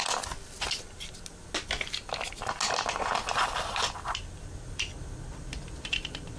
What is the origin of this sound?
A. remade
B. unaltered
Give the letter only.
B